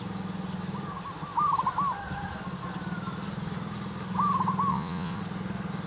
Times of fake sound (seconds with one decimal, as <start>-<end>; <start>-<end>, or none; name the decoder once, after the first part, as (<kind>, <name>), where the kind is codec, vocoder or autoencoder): 4.7-5.2 (vocoder, Vocos)